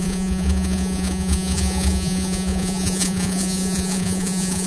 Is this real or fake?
fake